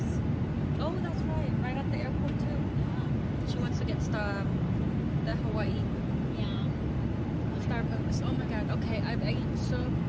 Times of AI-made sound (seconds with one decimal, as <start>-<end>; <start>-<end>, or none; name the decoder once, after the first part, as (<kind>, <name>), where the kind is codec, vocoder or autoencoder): none

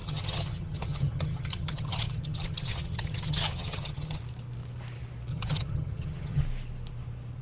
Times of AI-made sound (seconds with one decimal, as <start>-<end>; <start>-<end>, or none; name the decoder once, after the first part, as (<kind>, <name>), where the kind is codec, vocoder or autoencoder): 0.0-4.2 (vocoder, HiFi-GAN); 5.3-6.4

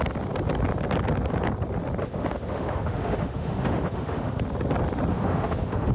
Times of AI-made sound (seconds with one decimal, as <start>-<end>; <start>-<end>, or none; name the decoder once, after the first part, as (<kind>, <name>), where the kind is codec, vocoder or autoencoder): 2.0-4.4 (autoencoder, DAC-VAE); 5.1-5.9

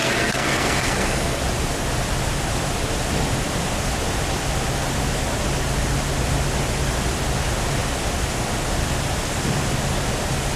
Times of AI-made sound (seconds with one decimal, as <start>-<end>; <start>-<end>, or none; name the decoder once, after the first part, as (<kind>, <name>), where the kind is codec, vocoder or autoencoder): 0.0-1.4 (codec, SNAC)

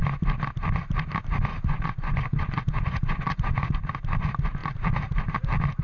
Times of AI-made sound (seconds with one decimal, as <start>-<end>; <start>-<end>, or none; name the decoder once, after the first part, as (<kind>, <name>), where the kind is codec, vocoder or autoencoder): 1.5-3.7 (vocoder, Vocos)

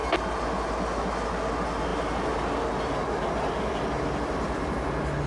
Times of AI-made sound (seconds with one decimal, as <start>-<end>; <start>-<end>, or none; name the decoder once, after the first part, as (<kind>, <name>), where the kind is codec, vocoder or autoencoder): none

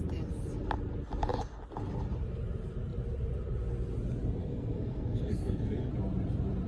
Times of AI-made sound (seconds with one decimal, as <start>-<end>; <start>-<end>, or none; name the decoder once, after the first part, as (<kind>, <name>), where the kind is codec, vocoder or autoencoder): 4.4-5.9 (codec, SNAC)